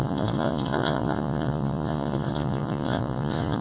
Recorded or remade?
remade